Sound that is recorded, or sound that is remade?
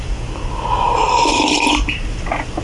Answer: recorded